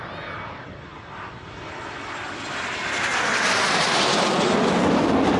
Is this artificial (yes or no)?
no